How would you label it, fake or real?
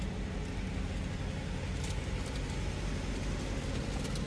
real